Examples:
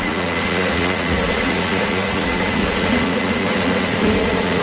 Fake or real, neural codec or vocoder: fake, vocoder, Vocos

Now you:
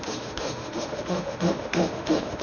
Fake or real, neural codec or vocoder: fake, autoencoder, DAC-VAE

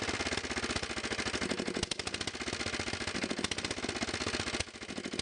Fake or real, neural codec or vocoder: real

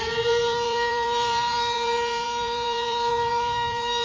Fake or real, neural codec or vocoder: fake, vocoder, BigVGAN v2